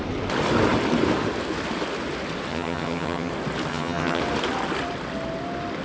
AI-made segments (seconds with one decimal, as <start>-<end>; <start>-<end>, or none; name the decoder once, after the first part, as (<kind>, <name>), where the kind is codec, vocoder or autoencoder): 2.5-3.3 (vocoder, HiFi-GAN); 3.7-4.2